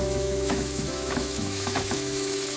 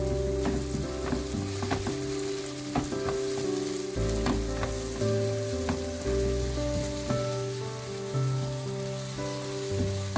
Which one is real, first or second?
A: second